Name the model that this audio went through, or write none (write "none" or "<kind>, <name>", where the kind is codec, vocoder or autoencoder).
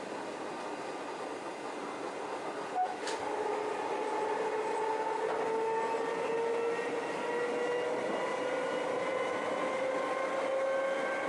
none